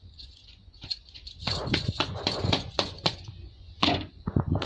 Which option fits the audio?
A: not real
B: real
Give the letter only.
A